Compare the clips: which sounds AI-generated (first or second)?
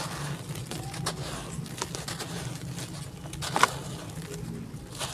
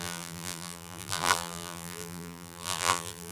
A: second